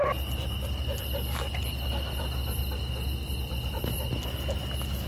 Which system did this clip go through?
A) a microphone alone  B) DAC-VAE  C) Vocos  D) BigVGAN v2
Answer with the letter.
A